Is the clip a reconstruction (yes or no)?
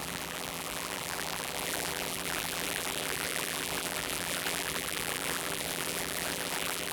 yes